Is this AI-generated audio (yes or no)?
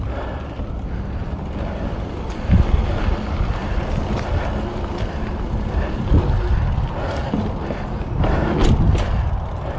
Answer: no